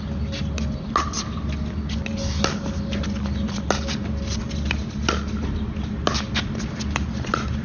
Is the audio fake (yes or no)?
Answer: no